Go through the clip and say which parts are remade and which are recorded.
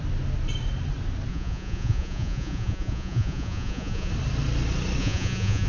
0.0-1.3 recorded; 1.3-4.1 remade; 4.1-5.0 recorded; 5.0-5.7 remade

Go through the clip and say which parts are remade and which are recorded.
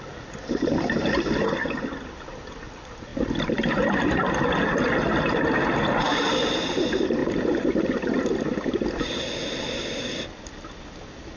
0.0-11.4 recorded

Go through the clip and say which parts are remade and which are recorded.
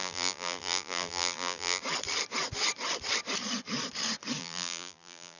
0.0-1.8 remade; 1.8-4.4 recorded; 4.4-5.4 remade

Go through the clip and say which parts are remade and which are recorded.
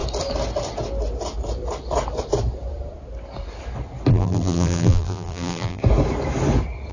0.0-4.1 recorded; 4.1-5.8 remade; 5.8-6.9 recorded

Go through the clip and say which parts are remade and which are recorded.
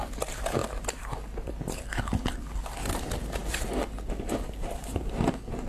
0.0-5.7 recorded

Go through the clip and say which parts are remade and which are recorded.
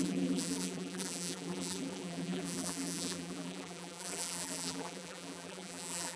0.0-6.2 remade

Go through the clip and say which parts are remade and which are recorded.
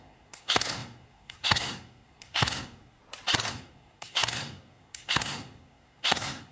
0.0-3.0 remade; 3.0-3.5 recorded; 3.5-6.5 remade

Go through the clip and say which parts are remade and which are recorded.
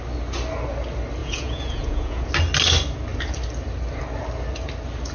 0.0-1.2 recorded; 1.2-2.3 remade; 2.3-5.1 recorded